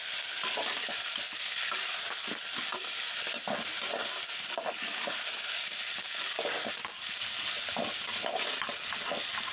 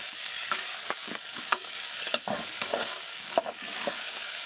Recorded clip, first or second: first